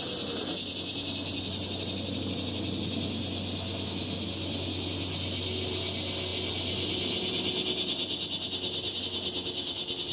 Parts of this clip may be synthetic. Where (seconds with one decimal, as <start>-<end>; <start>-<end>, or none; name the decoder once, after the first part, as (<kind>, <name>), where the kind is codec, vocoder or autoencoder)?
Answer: none